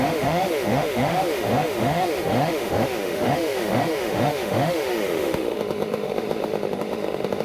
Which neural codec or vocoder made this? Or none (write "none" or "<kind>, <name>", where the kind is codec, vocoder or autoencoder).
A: autoencoder, DAC-VAE